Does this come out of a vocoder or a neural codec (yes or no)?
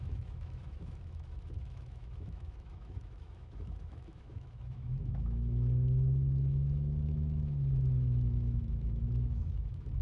yes